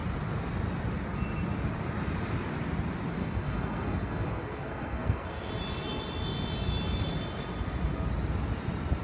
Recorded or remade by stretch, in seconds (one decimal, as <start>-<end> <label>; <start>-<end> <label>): 0.0-3.2 recorded; 3.2-5.5 remade; 5.5-9.0 recorded